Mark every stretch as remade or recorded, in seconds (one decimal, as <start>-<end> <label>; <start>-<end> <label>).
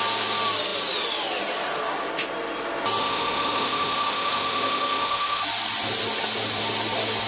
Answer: 0.0-3.0 recorded; 3.0-5.4 remade; 5.4-7.3 recorded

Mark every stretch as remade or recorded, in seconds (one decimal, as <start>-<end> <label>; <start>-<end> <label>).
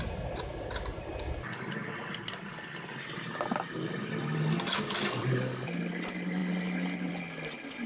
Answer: 0.0-7.9 recorded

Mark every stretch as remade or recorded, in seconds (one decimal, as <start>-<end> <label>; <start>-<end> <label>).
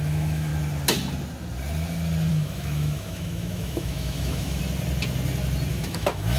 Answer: 0.0-0.5 remade; 0.5-2.3 recorded; 2.3-4.6 remade; 4.6-5.7 recorded; 5.7-6.4 remade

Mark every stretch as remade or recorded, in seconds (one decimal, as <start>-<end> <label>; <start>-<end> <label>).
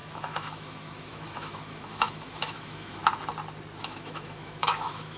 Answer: 0.0-3.0 remade; 3.0-3.8 recorded; 3.8-5.2 remade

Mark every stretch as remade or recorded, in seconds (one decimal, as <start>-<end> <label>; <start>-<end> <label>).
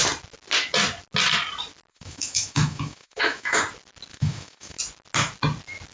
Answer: 0.0-1.9 recorded; 1.9-3.6 remade; 3.6-4.1 recorded; 4.1-4.8 remade; 4.8-5.9 recorded